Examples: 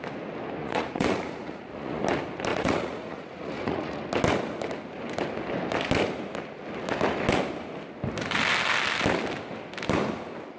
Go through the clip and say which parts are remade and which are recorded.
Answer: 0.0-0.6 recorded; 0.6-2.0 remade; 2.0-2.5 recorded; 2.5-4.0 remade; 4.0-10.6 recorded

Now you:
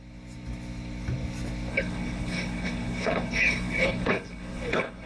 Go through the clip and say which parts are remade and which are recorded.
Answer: 0.0-1.7 recorded; 1.7-5.1 remade

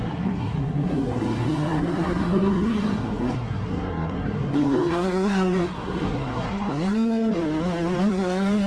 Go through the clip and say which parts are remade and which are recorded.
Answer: 0.0-7.4 remade; 7.4-8.1 recorded; 8.1-8.7 remade

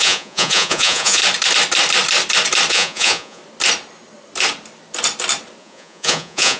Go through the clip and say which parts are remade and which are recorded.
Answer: 0.0-1.2 remade; 1.2-2.7 recorded; 2.7-3.4 remade; 3.4-5.6 recorded; 5.6-6.6 remade

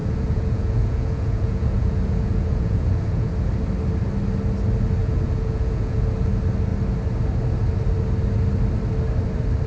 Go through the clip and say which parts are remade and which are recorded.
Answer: 0.0-3.3 remade; 3.3-5.0 recorded; 5.0-6.3 remade; 6.3-9.7 recorded

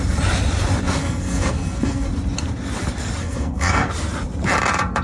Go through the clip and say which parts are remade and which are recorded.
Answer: 0.0-1.0 recorded; 1.0-2.1 remade; 2.1-3.2 recorded; 3.2-3.9 remade; 3.9-5.0 recorded

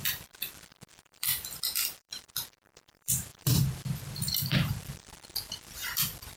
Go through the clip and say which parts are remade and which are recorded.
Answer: 0.0-6.4 remade

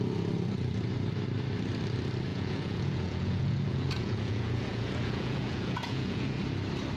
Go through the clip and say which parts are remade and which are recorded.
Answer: 0.0-2.3 recorded; 2.3-6.4 remade; 6.4-7.0 recorded